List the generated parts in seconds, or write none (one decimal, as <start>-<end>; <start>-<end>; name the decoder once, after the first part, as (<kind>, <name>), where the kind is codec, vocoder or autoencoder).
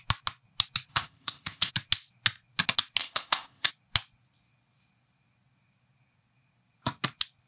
0.9-1.7 (codec, ZipCodec); 3.0-3.7